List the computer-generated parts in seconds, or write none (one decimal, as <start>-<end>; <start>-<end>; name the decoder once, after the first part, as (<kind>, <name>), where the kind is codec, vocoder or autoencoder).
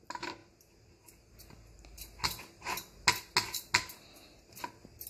none